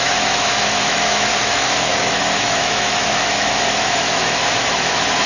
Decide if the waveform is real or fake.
fake